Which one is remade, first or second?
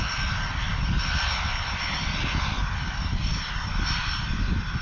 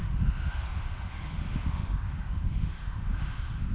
second